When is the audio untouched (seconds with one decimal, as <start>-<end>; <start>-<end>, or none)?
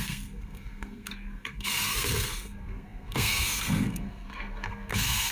none